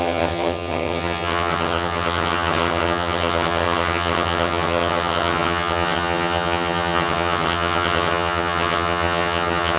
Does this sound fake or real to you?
fake